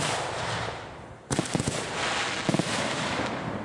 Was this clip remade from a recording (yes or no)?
no